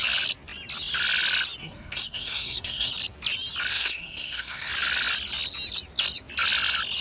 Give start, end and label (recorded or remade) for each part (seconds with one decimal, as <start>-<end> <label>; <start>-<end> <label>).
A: 0.0-1.6 recorded; 1.6-2.9 remade; 2.9-3.7 recorded; 3.7-4.7 remade; 4.7-7.0 recorded